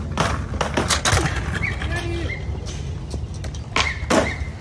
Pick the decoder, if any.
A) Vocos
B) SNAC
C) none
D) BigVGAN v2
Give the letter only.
C